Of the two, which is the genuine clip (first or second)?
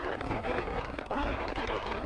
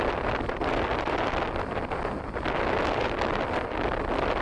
second